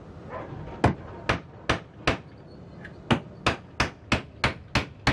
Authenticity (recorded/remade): recorded